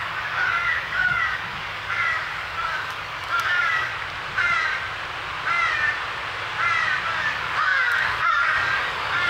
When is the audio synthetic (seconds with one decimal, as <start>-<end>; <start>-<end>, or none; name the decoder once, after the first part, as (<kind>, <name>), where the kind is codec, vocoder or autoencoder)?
0.0-3.9 (codec, DAC); 7.2-9.3